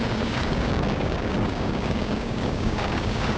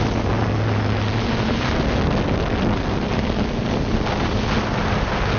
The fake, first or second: first